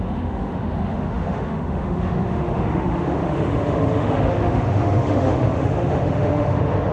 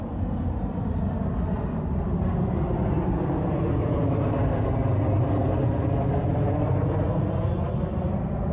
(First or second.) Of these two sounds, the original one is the second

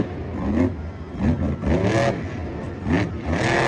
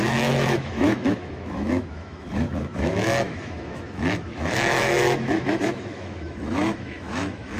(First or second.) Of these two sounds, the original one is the first